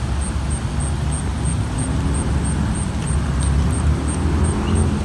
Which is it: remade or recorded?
recorded